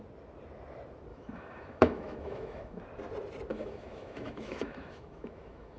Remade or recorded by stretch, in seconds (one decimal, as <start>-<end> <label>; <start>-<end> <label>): 0.0-1.1 recorded; 1.1-2.8 remade; 2.8-3.5 recorded; 3.5-5.8 remade